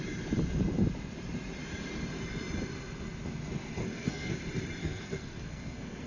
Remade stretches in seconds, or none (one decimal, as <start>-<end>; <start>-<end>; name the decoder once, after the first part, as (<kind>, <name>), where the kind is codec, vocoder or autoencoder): 3.8-4.3 (codec, SNAC); 4.8-6.1